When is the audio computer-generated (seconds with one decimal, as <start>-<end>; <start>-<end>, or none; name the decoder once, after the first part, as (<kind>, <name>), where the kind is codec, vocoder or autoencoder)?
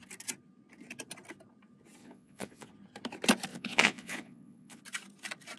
2.0-2.7 (vocoder, Vocos); 3.5-4.8